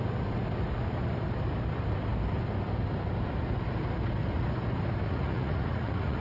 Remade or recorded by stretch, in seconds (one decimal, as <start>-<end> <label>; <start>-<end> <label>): 0.0-5.0 recorded; 5.0-6.2 remade